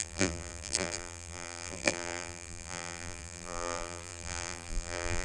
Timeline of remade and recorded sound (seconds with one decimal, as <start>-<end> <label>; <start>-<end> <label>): 0.0-5.2 remade